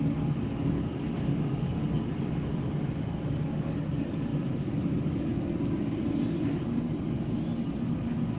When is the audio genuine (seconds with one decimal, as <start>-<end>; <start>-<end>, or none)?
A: 0.0-8.4